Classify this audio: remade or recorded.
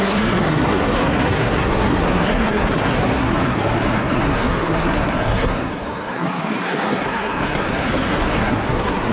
remade